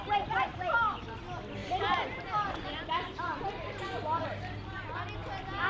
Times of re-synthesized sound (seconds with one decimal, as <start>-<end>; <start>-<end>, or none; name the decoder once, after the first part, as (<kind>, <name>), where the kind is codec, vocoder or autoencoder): 0.5-1.1 (vocoder, BigVGAN v2); 1.6-3.4